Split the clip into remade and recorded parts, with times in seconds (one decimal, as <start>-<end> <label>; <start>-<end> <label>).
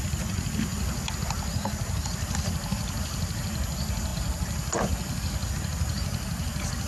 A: 0.0-6.9 recorded